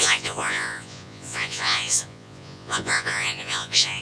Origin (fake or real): fake